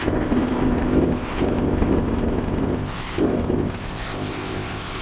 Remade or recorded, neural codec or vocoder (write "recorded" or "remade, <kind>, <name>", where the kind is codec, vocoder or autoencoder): remade, codec, ZipCodec